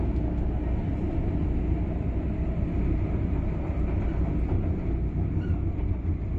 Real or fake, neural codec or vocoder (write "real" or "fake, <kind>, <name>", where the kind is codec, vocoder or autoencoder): real